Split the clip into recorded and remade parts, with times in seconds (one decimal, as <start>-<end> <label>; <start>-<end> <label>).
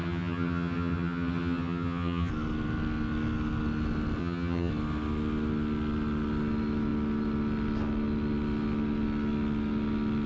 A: 0.0-2.3 remade; 2.3-4.2 recorded; 4.2-4.7 remade; 4.7-10.3 recorded